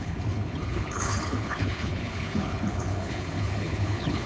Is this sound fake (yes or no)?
yes